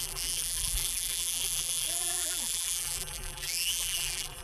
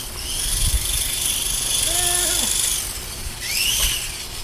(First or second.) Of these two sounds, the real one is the second